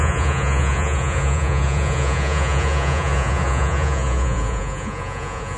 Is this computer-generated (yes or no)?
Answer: yes